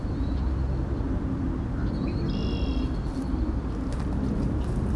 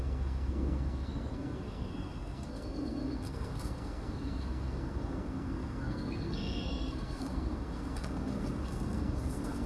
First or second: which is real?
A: first